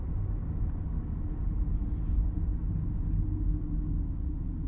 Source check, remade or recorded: recorded